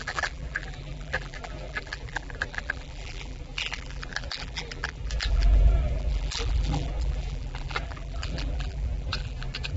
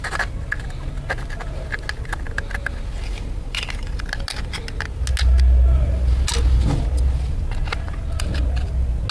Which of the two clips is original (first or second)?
second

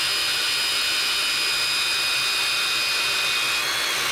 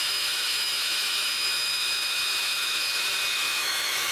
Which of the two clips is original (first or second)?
first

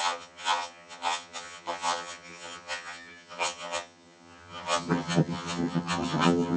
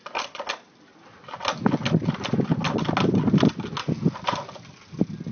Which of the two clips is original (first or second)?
second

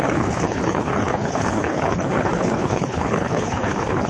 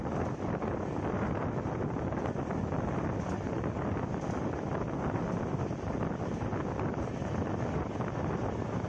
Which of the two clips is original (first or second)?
second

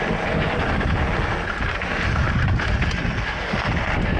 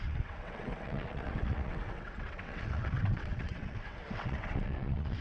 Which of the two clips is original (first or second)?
first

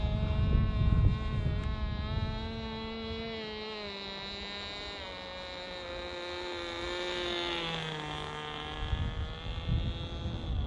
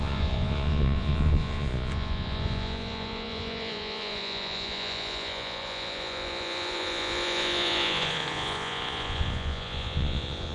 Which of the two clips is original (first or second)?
first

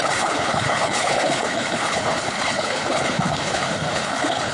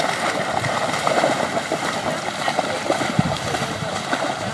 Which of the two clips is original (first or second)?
second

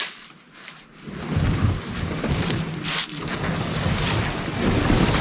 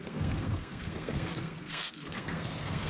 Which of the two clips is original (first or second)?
first